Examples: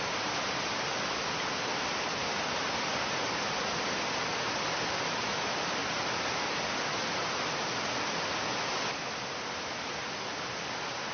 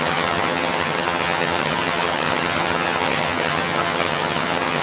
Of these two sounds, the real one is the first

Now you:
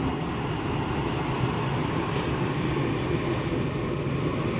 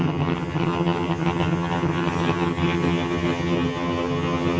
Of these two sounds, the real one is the first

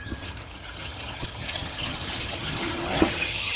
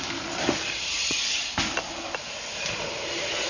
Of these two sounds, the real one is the second